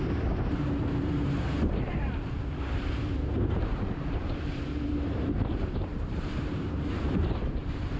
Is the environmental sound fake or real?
fake